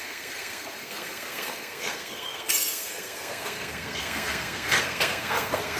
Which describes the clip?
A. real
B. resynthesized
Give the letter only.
B